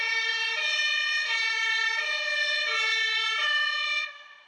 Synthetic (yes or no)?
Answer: yes